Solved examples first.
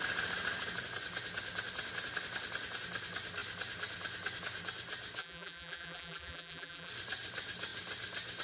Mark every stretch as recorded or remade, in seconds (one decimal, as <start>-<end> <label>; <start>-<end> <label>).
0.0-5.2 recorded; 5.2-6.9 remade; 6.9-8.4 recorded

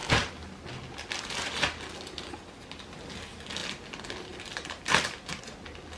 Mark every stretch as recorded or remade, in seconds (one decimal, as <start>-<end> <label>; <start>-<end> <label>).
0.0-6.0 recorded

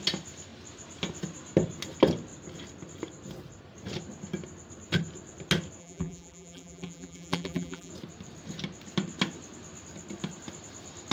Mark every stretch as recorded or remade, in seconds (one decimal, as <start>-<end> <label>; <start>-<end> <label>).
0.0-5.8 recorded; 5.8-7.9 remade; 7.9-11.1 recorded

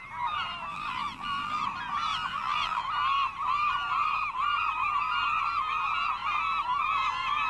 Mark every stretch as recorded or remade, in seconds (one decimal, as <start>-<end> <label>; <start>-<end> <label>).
0.0-0.7 recorded; 0.7-1.6 remade; 1.6-2.1 recorded; 2.1-2.8 remade; 2.8-7.5 recorded